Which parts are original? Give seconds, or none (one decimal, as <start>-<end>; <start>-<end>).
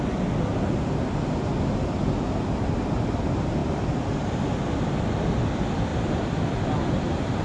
0.0-3.6; 4.3-5.9; 6.4-7.4